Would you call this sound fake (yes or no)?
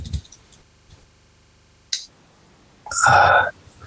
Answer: no